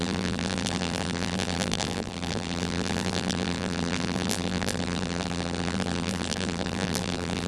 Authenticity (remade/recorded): remade